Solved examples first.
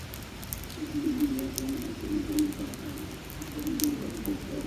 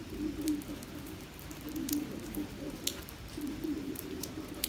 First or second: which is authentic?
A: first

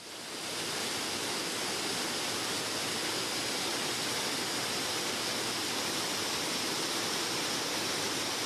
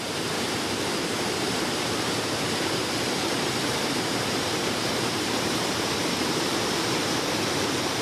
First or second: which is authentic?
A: first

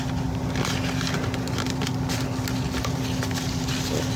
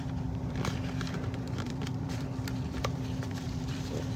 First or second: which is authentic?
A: first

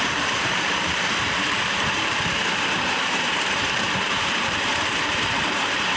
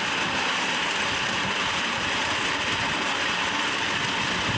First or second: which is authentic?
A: second